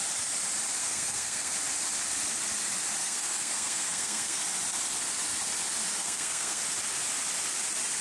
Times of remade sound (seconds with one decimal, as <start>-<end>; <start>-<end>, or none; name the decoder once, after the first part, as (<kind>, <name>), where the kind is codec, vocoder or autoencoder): 0.8-1.5 (codec, SNAC); 3.0-4.4; 6.0-6.6